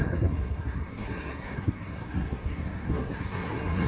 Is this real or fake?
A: fake